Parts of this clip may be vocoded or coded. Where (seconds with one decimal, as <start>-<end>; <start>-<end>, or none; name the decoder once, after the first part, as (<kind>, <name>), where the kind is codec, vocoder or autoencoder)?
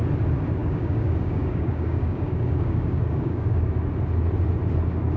0.6-3.7 (codec, DAC)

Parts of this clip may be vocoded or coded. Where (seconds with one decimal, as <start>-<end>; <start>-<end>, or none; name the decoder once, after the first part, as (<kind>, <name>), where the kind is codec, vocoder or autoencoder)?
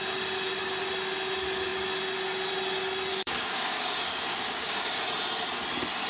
3.1-5.0 (codec, DAC)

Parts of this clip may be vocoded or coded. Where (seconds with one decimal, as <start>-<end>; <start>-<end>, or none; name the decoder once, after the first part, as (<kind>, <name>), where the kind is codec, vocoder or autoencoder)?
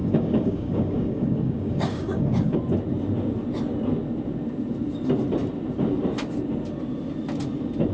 0.0-2.6 (codec, DAC)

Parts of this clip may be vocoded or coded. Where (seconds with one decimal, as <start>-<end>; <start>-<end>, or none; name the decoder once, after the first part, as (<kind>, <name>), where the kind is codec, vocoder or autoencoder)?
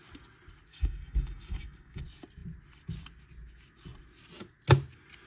0.7-2.0 (codec, DAC)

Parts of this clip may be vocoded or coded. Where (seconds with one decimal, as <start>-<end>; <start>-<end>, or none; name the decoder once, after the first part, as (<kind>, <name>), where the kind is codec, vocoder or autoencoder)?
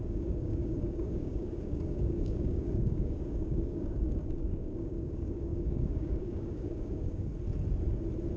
0.0-7.3 (codec, DAC)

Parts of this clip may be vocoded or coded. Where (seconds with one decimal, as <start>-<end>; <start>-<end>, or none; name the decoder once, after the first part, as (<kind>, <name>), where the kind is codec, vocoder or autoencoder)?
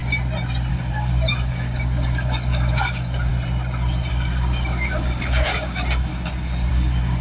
0.7-3.3 (codec, DAC); 4.1-6.1; 6.7-7.2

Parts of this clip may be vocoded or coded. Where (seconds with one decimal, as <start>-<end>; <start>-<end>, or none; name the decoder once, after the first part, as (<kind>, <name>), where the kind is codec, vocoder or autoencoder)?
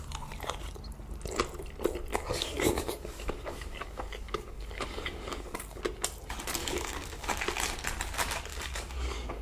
2.1-5.8 (codec, DAC); 6.6-7.4; 8.5-9.4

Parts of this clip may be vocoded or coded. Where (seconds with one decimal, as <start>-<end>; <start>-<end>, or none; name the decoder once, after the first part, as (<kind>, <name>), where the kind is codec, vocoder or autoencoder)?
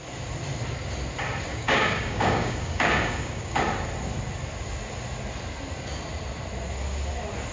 1.5-3.6 (codec, DAC)